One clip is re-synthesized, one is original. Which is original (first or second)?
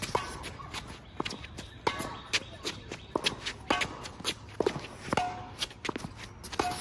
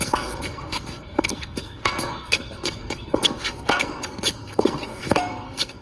first